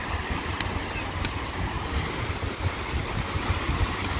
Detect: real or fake real